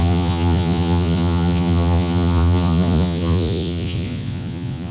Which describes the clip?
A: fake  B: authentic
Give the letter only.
A